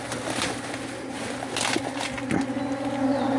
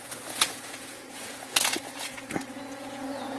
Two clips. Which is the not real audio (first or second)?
second